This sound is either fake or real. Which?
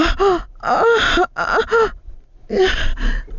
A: real